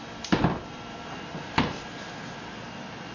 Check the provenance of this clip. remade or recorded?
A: remade